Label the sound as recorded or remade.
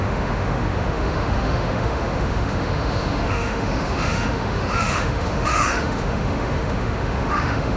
remade